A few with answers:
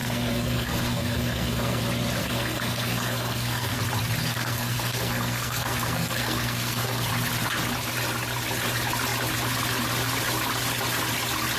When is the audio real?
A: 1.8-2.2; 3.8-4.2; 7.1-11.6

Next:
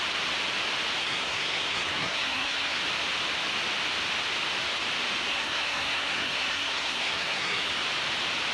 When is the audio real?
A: 0.0-1.0; 2.8-5.3; 7.7-8.5

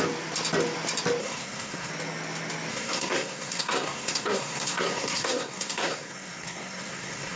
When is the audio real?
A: 0.0-1.2; 1.9-2.7